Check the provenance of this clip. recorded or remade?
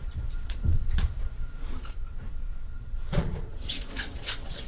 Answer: remade